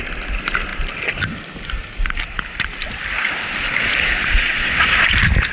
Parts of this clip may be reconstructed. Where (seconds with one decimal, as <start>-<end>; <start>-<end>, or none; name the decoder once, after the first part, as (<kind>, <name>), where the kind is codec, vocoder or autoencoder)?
4.2-4.7 (vocoder, Vocos)